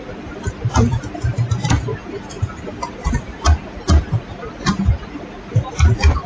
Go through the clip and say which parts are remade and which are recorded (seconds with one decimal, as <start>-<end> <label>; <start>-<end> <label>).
0.0-6.3 recorded

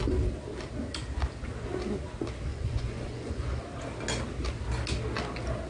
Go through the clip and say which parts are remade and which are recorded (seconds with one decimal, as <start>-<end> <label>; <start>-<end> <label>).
0.0-2.5 recorded; 2.5-3.6 remade; 3.6-5.7 recorded

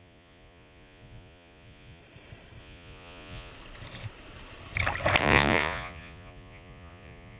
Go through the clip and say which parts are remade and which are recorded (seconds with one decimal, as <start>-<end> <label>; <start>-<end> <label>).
0.0-2.0 remade; 2.0-2.6 recorded; 2.6-3.5 remade; 3.5-5.2 recorded; 5.2-7.4 remade

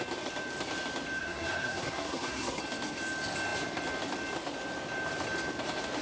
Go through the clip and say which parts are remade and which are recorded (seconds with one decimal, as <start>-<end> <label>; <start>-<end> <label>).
0.0-1.2 recorded; 1.2-2.6 remade; 2.6-6.0 recorded

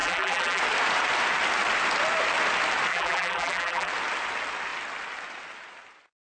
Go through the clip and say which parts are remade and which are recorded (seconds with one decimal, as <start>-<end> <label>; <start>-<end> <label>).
0.0-0.6 remade; 0.6-2.9 recorded; 2.9-3.9 remade; 3.9-6.4 recorded

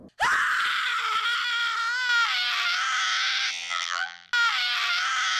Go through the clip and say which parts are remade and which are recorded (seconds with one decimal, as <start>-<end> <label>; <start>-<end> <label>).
0.0-3.5 recorded; 3.5-4.3 remade; 4.3-5.4 recorded

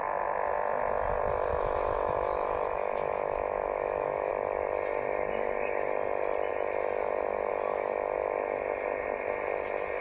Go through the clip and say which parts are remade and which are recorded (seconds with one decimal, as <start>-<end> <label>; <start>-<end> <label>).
0.0-1.5 recorded; 1.5-4.3 remade; 4.3-10.0 recorded

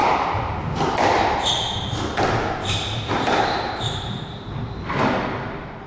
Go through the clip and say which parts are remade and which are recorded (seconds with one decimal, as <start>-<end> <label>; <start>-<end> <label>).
0.0-2.6 recorded; 2.6-4.8 remade; 4.8-5.9 recorded